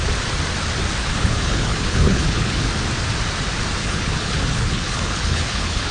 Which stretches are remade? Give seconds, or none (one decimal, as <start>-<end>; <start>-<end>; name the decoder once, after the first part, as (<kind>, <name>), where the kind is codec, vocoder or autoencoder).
1.0-2.7 (codec, HILCodec); 3.8-5.9